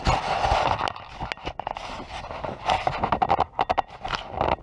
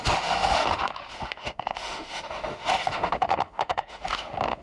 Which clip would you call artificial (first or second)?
second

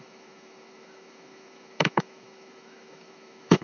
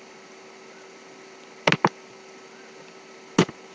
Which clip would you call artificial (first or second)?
first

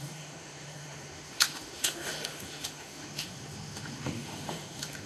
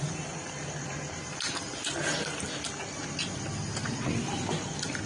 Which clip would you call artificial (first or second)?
first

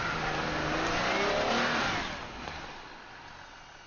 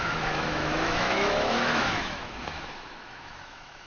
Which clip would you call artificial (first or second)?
second